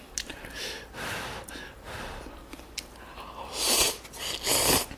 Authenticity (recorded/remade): recorded